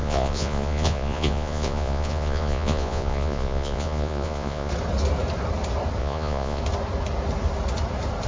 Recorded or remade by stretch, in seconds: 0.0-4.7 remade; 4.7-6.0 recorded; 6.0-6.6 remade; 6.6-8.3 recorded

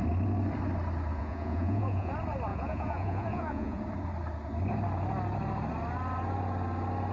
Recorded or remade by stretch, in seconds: 0.0-1.1 recorded; 1.1-2.1 remade; 2.1-2.5 recorded; 2.5-3.8 remade; 3.8-7.1 recorded

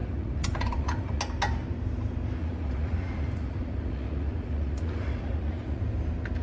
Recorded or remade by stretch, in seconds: 0.0-1.2 remade; 1.2-2.4 recorded; 2.4-5.8 remade; 5.8-6.4 recorded

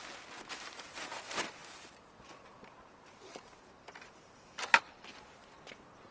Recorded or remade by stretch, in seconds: 0.0-6.1 recorded

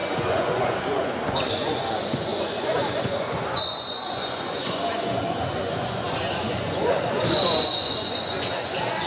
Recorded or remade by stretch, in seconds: 0.0-9.1 remade

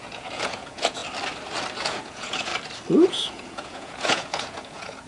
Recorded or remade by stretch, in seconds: 0.0-1.0 remade; 1.0-1.8 recorded; 1.8-2.5 remade; 2.5-3.1 recorded; 3.1-5.1 remade

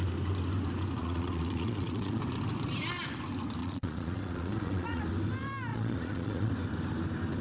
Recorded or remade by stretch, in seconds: 0.0-1.0 recorded; 1.0-2.2 remade; 2.2-3.6 recorded; 3.6-5.0 remade; 5.0-5.7 recorded; 5.7-6.5 remade; 6.5-7.4 recorded

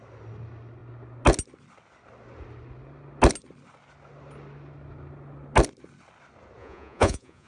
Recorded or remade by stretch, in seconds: 0.0-6.6 recorded; 6.6-7.5 remade